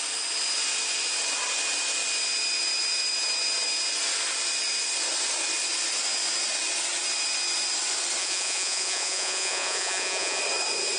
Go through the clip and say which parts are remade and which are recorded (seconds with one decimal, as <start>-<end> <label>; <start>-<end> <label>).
0.0-8.2 recorded; 8.2-10.4 remade; 10.4-11.0 recorded